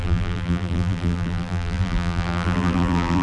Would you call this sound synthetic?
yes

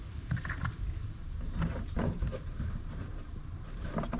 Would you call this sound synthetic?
yes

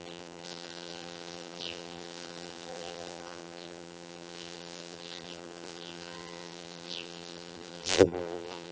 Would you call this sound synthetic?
yes